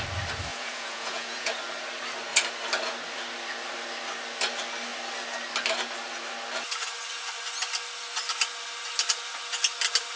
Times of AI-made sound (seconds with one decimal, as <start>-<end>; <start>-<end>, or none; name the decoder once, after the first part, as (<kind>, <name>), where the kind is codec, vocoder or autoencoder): 0.5-1.5 (vocoder, Vocos)